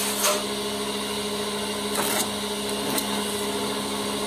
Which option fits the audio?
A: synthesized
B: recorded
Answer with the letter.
B